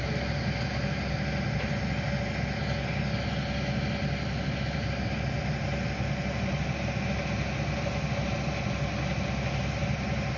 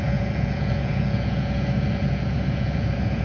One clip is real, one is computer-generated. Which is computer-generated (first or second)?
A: second